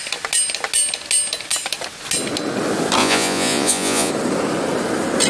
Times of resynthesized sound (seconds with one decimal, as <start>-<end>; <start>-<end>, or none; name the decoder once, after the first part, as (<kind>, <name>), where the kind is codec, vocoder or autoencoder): 3.0-4.1 (vocoder, Vocos)

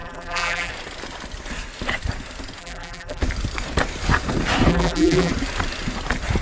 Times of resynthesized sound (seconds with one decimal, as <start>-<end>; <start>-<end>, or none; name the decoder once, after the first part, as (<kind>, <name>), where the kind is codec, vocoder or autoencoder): 0.0-0.7 (vocoder, BigVGAN v2); 2.6-3.2; 4.7-5.3